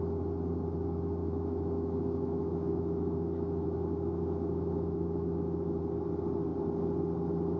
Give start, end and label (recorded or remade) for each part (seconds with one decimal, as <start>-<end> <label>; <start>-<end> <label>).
0.0-1.2 recorded; 1.2-5.8 remade; 5.8-7.6 recorded